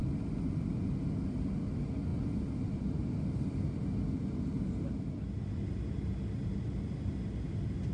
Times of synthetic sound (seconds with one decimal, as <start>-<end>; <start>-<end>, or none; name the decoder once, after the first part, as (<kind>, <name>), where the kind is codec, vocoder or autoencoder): none